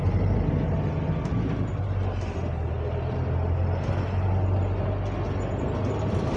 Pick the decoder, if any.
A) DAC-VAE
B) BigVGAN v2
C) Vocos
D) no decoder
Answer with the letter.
D